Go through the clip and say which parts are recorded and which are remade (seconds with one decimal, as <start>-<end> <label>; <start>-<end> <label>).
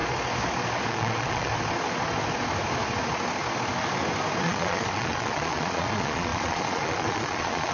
0.0-0.9 recorded; 0.9-1.5 remade; 1.5-4.4 recorded; 4.4-7.7 remade